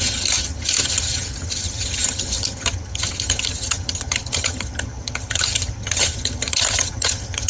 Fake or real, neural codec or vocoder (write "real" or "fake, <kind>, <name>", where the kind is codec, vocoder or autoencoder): fake, vocoder, HiFi-GAN